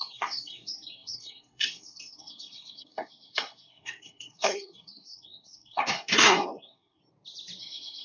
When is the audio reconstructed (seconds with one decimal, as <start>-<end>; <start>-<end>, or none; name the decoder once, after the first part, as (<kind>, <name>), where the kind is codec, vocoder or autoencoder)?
0.0-7.0 (codec, SNAC); 7.6-8.0